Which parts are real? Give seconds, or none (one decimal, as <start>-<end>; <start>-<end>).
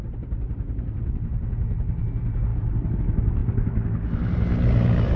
0.0-5.2